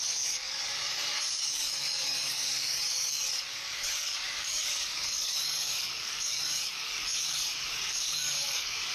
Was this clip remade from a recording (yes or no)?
yes